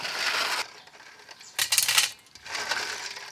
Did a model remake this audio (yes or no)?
no